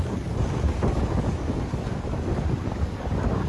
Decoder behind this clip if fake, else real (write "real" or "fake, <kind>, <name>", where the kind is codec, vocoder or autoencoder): fake, codec, DAC